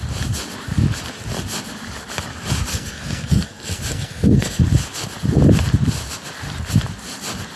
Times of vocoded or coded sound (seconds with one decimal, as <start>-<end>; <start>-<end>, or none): 2.7-4.6